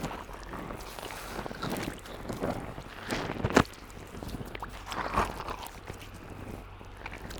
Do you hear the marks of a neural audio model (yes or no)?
no